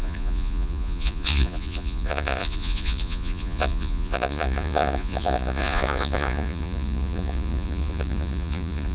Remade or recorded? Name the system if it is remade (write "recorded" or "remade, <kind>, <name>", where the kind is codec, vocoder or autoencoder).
remade, vocoder, Vocos